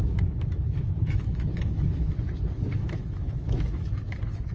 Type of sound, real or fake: fake